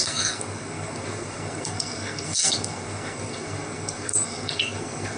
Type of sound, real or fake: fake